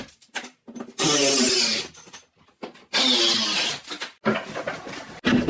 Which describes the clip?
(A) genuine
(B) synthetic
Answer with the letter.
A